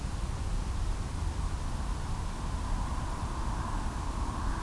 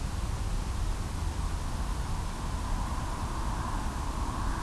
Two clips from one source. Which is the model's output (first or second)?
first